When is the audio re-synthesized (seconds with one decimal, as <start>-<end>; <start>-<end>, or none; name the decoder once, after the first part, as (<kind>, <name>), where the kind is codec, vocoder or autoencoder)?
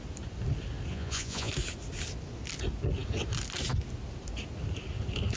0.9-1.5 (vocoder, Vocos)